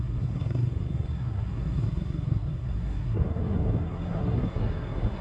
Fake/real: fake